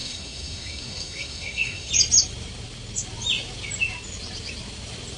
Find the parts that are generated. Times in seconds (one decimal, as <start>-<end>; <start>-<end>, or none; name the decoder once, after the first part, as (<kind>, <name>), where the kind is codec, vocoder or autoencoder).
0.0-1.9 (codec, SNAC)